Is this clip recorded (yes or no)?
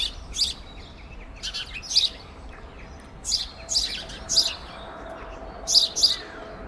yes